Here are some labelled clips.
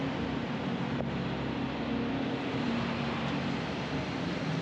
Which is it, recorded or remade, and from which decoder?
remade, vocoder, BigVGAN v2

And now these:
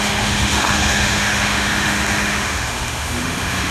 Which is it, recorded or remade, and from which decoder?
remade, autoencoder, DAC-VAE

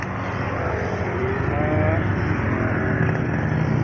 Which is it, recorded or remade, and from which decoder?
recorded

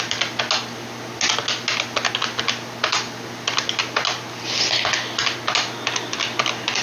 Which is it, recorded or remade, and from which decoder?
recorded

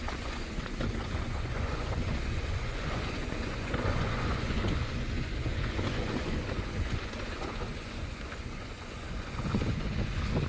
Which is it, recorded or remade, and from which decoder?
remade, vocoder, Vocos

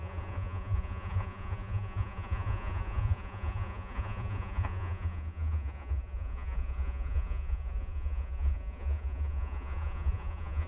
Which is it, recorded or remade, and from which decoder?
remade, vocoder, Vocos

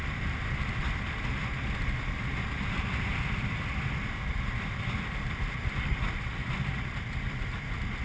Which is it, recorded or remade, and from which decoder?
recorded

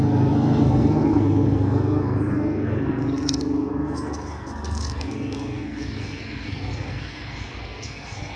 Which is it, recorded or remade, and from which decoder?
remade, codec, SNAC